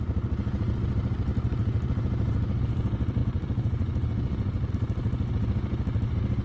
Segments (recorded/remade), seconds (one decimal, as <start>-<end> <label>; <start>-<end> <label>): 0.0-3.2 recorded; 3.2-4.7 remade; 4.7-6.4 recorded